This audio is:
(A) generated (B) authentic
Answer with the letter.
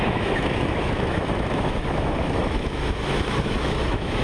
A